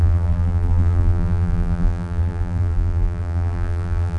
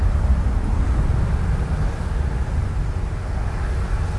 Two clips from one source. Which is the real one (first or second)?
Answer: second